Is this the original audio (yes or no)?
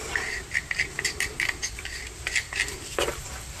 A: yes